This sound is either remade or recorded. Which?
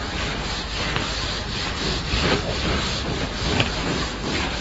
recorded